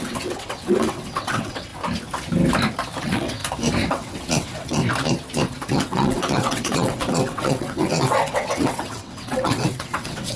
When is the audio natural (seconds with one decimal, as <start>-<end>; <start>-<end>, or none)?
1.7-3.0; 3.4-3.9; 4.8-5.7